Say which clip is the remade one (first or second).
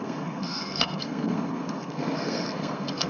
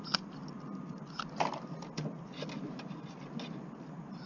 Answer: first